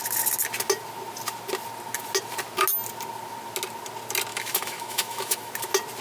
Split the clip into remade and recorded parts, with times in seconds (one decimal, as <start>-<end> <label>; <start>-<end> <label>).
0.0-4.3 recorded; 4.3-5.5 remade; 5.5-6.0 recorded